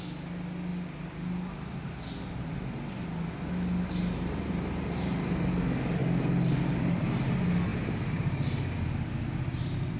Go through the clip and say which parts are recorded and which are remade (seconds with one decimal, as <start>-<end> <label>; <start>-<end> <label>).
0.0-10.0 recorded